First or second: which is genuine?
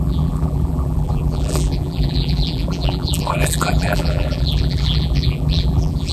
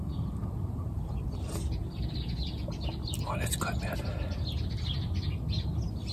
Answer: second